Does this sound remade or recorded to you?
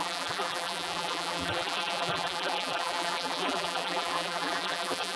remade